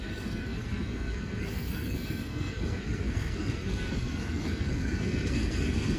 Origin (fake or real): fake